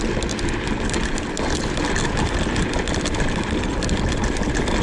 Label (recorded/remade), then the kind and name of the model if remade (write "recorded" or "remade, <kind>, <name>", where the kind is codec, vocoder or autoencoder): recorded